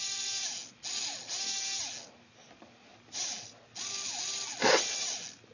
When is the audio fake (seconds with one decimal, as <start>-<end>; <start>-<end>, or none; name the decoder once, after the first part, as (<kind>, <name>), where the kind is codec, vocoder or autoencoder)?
none